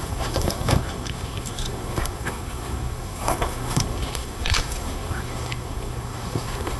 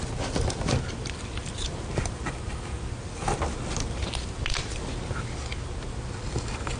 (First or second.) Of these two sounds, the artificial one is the first